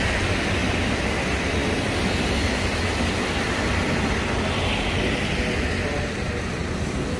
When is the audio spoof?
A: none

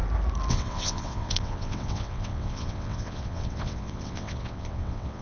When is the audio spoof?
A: 0.5-5.2

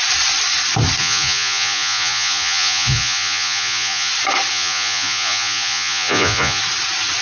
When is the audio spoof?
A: 1.0-4.1; 4.5-6.6

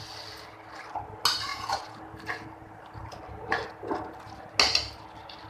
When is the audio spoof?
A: 1.5-2.0

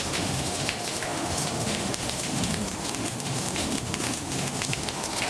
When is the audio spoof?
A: 0.0-5.3